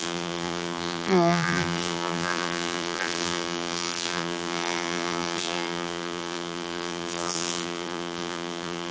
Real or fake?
fake